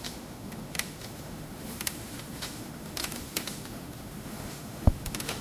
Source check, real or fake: fake